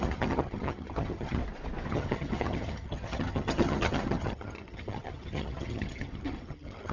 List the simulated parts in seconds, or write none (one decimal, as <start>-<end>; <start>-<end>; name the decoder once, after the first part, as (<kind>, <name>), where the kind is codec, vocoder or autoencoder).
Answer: 0.0-1.4 (vocoder, HiFi-GAN); 1.9-6.9